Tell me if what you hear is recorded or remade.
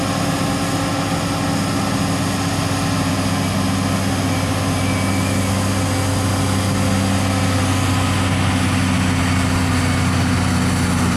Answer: recorded